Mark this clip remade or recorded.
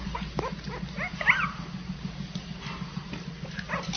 recorded